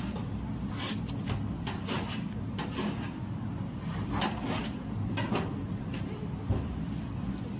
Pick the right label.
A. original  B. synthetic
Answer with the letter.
A